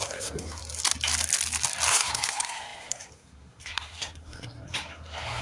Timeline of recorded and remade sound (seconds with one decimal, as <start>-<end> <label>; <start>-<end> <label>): 0.0-0.6 remade; 0.6-1.9 recorded; 1.9-5.4 remade